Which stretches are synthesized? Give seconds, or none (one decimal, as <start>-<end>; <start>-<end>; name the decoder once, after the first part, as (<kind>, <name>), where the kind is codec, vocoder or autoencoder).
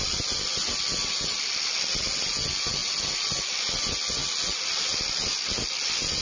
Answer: none